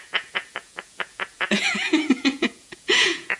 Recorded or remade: remade